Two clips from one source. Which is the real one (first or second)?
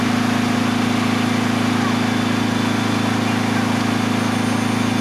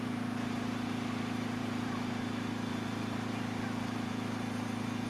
first